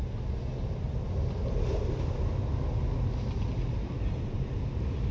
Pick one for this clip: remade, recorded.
recorded